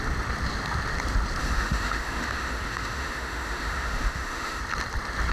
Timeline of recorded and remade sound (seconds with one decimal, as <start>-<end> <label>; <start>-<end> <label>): 0.0-1.4 recorded; 1.4-4.6 remade; 4.6-5.3 recorded